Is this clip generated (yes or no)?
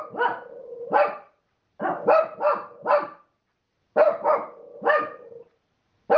no